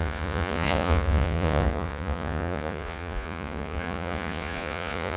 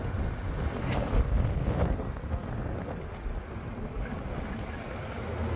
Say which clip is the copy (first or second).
first